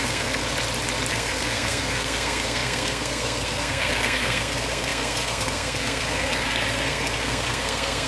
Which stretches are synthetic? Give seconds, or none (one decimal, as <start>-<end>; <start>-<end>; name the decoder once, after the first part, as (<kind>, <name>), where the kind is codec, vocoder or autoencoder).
0.0-0.4 (codec, SNAC); 1.1-8.1